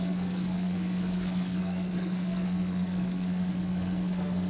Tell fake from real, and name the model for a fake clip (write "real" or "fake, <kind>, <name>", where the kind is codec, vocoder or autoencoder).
fake, codec, SNAC